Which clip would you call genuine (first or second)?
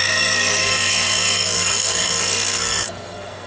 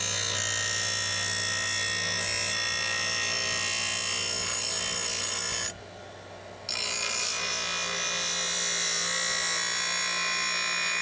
second